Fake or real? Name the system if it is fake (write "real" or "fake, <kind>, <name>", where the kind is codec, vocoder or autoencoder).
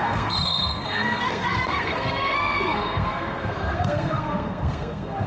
fake, codec, SNAC